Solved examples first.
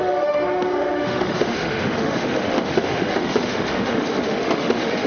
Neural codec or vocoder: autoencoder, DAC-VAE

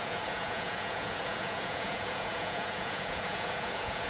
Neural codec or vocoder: vocoder, Vocos